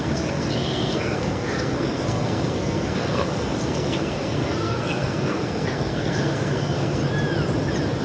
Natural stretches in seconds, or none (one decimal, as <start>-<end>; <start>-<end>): 7.0-8.0